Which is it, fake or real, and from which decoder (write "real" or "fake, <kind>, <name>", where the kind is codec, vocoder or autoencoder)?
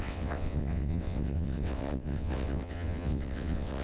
fake, vocoder, WaveNeXt